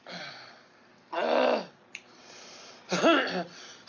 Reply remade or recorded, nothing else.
recorded